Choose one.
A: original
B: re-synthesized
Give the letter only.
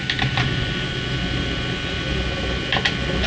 A